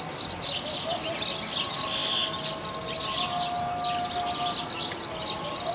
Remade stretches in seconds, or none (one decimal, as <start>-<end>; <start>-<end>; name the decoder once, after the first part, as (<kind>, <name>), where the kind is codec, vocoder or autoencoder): none